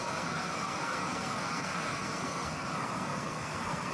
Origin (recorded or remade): remade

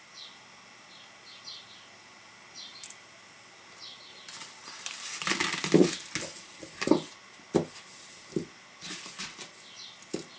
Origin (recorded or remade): recorded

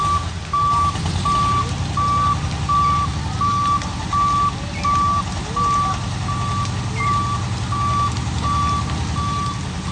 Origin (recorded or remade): recorded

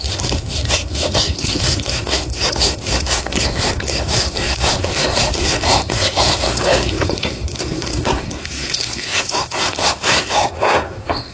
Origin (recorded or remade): remade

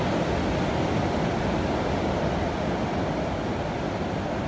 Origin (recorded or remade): recorded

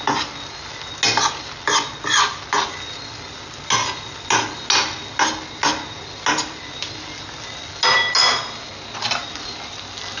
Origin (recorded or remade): recorded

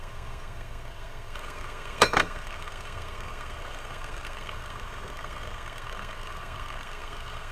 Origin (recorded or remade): remade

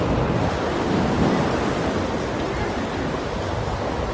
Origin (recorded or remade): recorded